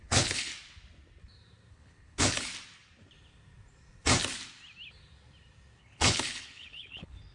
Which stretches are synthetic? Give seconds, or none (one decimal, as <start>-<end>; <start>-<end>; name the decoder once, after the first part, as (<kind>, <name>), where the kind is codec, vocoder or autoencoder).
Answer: 0.0-0.5 (codec, HILCodec); 1.7-2.5; 5.8-7.3